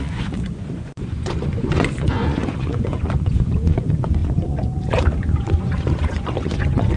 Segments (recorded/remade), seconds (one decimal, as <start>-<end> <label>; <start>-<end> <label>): 0.0-7.0 remade